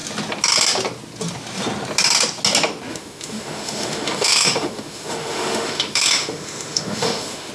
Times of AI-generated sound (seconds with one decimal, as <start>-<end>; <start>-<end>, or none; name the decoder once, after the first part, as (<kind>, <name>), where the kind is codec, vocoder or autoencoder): 2.9-7.5 (autoencoder, DAC-VAE)